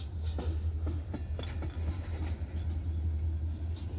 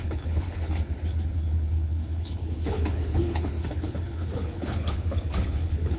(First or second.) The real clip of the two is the first